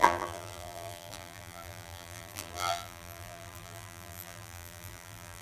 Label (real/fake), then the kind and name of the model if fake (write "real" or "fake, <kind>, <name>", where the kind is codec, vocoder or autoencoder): fake, vocoder, BigVGAN v2